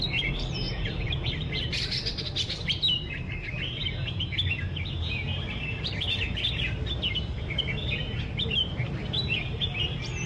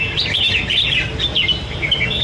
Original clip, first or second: second